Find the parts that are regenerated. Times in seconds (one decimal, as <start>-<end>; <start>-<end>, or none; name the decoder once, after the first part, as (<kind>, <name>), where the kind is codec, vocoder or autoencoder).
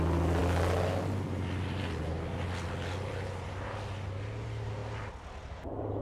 none